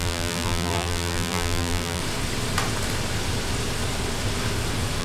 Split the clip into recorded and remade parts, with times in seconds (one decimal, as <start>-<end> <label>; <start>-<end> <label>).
0.0-2.0 remade; 2.0-5.0 recorded